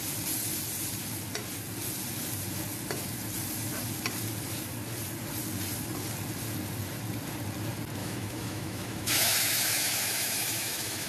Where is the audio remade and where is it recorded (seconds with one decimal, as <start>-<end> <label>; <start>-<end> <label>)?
0.0-8.0 recorded; 8.0-11.1 remade